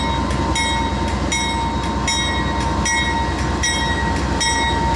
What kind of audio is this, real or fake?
real